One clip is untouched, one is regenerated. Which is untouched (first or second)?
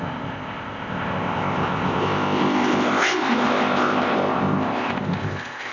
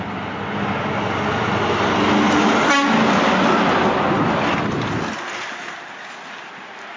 second